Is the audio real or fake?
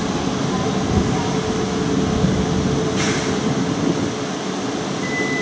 real